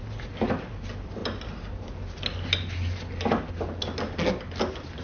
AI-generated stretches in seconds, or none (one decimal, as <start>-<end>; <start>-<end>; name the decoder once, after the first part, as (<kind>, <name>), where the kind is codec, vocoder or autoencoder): none